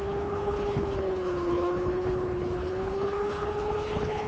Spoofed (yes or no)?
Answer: yes